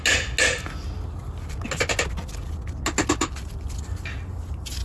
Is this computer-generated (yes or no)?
no